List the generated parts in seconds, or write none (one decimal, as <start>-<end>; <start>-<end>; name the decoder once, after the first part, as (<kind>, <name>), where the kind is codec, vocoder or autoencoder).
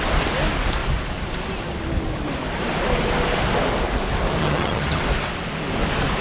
4.4-5.0 (vocoder, HiFi-GAN)